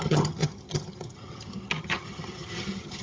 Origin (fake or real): fake